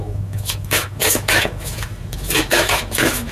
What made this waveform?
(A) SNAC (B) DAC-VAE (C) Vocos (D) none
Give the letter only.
B